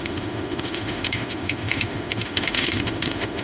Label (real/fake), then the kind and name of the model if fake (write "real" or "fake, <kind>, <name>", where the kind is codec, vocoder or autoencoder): fake, autoencoder, DAC-VAE